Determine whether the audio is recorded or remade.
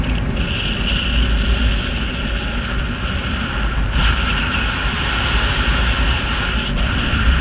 recorded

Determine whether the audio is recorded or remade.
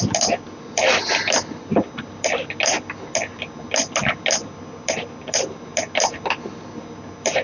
recorded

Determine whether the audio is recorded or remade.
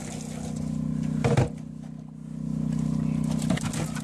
recorded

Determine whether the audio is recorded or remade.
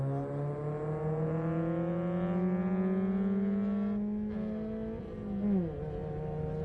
recorded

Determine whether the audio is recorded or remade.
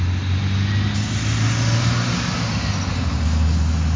recorded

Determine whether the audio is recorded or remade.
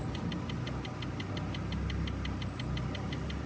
recorded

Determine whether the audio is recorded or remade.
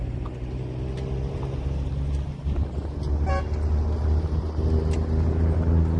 recorded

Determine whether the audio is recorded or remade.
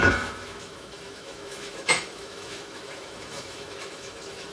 remade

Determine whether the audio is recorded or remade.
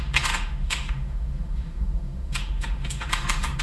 remade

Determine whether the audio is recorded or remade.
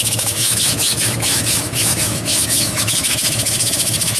remade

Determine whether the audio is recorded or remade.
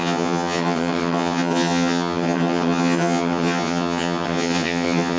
remade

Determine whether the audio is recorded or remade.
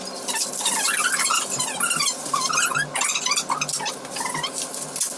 recorded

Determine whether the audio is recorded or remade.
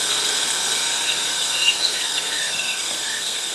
remade